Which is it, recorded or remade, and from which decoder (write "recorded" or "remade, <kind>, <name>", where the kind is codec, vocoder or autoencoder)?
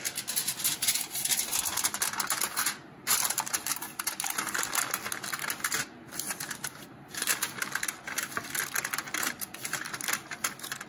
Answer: recorded